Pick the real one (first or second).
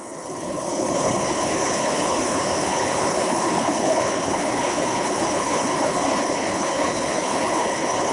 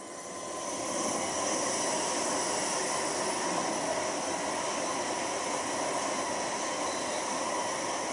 second